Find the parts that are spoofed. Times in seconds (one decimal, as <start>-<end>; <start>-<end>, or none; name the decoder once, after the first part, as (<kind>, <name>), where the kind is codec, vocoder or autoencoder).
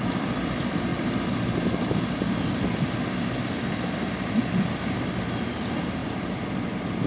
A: 0.9-5.2 (vocoder, BigVGAN v2); 6.0-6.5